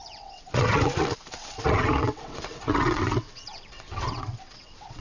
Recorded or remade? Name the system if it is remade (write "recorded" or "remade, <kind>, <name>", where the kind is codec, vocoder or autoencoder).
remade, vocoder, WaveNeXt